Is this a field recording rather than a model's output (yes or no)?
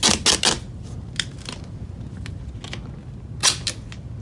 yes